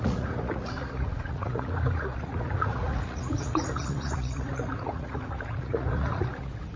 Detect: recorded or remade remade